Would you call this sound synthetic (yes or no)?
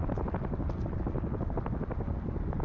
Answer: no